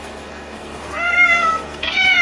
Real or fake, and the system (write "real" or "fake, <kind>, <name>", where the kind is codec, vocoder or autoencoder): fake, codec, SNAC